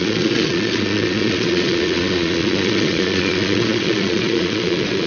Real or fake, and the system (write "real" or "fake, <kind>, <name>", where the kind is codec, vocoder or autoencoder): fake, vocoder, Vocos